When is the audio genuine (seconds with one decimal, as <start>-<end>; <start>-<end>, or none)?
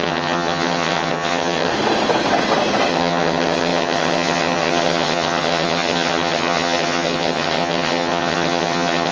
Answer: 1.7-2.9